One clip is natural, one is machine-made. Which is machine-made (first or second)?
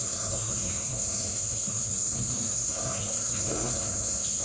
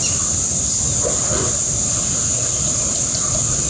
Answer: first